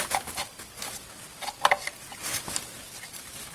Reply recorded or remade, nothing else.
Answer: recorded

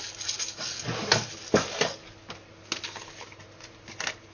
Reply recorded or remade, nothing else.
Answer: recorded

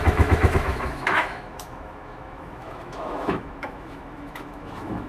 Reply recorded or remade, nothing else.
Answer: remade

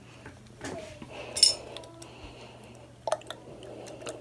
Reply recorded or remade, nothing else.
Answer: recorded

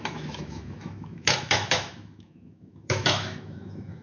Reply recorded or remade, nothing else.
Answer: remade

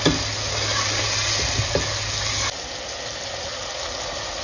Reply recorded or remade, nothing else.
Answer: recorded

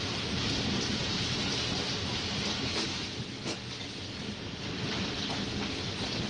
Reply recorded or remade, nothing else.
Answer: recorded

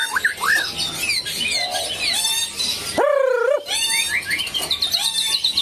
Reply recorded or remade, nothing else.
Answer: recorded